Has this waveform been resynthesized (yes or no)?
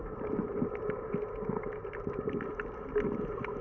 no